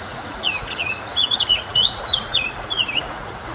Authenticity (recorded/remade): remade